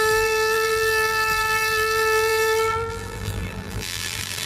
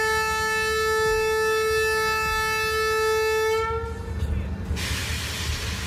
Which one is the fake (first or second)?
first